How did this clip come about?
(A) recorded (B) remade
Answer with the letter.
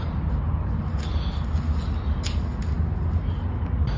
A